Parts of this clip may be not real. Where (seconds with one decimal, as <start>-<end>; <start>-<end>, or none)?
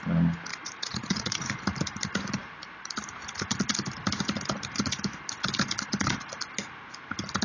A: 0.5-1.6